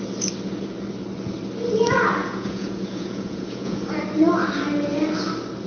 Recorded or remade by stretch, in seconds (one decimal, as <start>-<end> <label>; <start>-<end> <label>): 0.0-2.2 recorded; 2.2-4.0 remade; 4.0-5.7 recorded

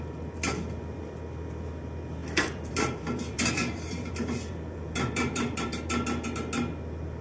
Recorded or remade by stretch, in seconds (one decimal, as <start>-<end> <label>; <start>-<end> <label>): 0.0-2.2 recorded; 2.2-5.8 remade; 5.8-7.2 recorded

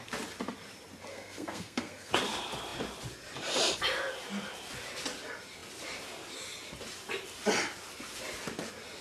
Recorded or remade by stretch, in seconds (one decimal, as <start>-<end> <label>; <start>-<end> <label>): 0.0-1.1 recorded; 1.1-2.1 remade; 2.1-9.0 recorded

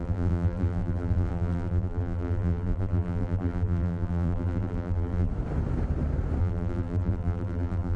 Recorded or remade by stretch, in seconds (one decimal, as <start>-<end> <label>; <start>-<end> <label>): 0.0-5.3 remade; 5.3-6.4 recorded; 6.4-8.0 remade